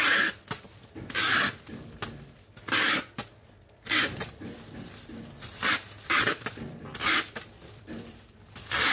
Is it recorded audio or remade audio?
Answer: recorded